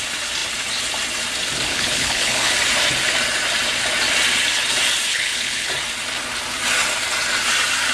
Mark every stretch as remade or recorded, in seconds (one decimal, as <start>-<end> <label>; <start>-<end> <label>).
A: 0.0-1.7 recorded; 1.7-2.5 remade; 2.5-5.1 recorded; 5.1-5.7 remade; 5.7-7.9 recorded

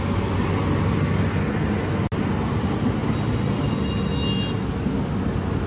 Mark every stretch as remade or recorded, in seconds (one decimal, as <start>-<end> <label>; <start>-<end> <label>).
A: 0.0-5.7 recorded

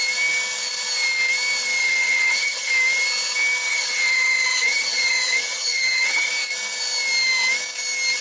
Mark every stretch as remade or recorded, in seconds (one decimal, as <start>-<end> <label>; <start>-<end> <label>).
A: 0.0-1.8 recorded; 1.8-2.7 remade; 2.7-3.7 recorded; 3.7-6.3 remade; 6.3-8.2 recorded

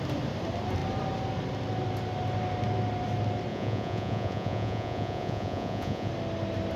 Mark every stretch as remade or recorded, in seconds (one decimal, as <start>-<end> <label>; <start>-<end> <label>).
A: 0.0-3.5 recorded; 3.5-6.1 remade; 6.1-6.8 recorded

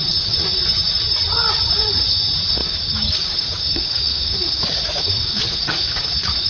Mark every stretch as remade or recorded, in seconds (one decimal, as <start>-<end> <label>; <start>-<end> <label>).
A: 0.0-2.6 recorded; 2.6-6.5 remade

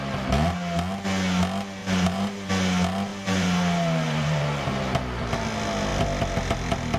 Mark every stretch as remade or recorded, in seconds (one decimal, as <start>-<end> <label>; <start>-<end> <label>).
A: 0.0-1.8 recorded; 1.8-2.5 remade; 2.5-3.1 recorded; 3.1-4.8 remade; 4.8-7.0 recorded

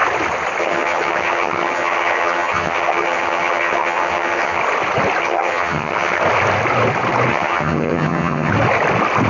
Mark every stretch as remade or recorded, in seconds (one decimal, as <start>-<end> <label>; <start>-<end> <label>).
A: 0.0-0.6 recorded; 0.6-4.6 remade; 4.6-5.2 recorded; 5.2-6.2 remade; 6.2-7.3 recorded; 7.3-8.5 remade; 8.5-9.3 recorded

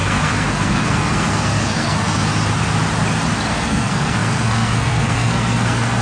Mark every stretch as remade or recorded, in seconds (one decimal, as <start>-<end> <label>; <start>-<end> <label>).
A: 0.0-2.3 remade; 2.3-3.5 recorded; 3.5-6.0 remade